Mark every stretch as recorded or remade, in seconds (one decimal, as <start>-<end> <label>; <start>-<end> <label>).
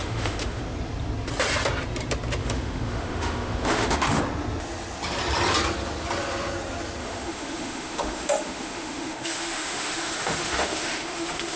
0.0-0.6 remade; 0.6-2.4 recorded; 2.4-4.2 remade; 4.2-7.0 recorded; 7.0-11.6 remade